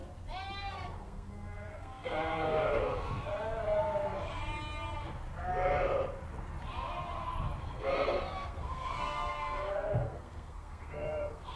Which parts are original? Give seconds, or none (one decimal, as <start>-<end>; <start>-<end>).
0.0-0.6; 3.3-7.6